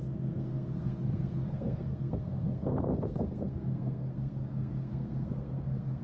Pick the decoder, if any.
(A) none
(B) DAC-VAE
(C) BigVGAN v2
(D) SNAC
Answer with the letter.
D